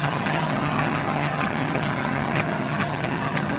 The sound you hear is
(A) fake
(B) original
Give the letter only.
A